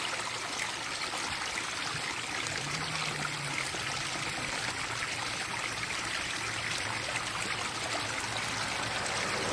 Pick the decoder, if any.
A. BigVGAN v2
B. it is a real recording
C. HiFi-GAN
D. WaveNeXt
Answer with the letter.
B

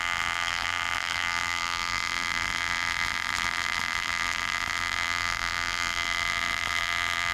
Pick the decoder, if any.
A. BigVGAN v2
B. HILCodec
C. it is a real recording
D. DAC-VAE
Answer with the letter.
A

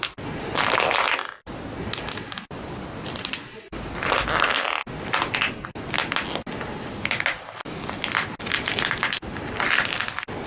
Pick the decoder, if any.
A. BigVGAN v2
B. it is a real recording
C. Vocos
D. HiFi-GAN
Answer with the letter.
B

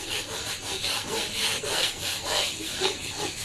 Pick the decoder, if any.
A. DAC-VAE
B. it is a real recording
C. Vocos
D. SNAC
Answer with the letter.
D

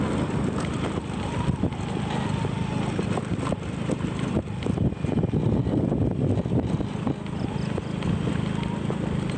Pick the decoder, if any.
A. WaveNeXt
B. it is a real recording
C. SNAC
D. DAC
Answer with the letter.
B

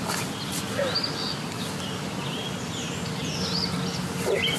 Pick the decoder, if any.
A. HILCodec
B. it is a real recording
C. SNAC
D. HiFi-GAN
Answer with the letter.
B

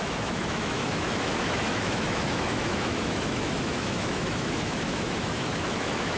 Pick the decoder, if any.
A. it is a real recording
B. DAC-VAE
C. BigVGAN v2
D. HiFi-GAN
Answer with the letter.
B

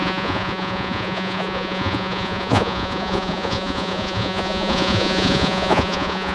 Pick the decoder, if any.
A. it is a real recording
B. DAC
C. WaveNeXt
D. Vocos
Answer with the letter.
D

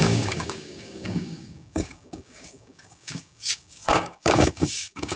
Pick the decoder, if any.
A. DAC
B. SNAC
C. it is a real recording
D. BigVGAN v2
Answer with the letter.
A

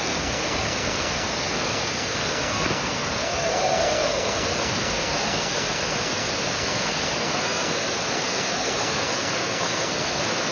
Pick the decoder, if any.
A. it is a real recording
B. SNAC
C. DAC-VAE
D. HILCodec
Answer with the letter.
B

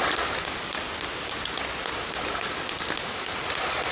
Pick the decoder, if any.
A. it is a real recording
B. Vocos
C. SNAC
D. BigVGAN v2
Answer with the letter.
A